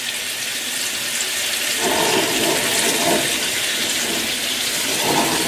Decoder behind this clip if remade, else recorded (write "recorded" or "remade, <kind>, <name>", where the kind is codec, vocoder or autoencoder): recorded